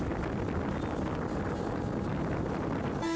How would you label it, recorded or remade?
recorded